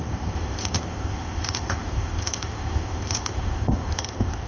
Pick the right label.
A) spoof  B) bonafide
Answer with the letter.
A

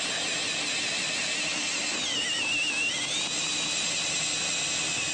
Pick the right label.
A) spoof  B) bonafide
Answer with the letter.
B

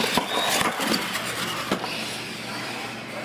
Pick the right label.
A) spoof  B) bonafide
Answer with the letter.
B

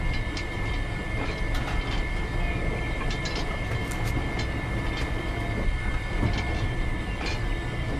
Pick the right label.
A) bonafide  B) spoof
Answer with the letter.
A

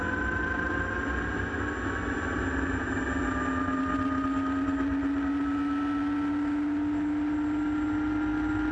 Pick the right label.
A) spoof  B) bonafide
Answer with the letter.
B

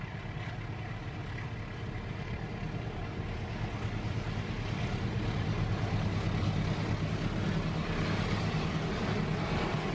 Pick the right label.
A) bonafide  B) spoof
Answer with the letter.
A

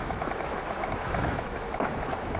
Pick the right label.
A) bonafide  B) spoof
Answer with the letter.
B